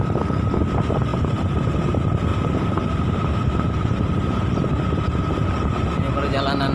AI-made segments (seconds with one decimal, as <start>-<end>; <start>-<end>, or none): 1.1-1.7; 2.3-5.2